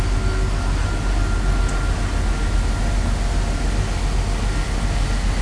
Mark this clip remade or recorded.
recorded